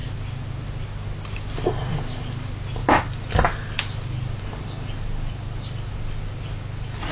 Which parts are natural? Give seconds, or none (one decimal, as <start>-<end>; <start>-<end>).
0.0-7.1